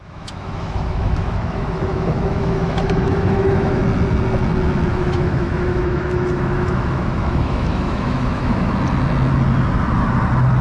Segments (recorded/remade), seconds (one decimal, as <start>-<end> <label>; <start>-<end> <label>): 0.0-3.8 remade; 3.8-4.9 recorded; 4.9-8.7 remade; 8.7-10.6 recorded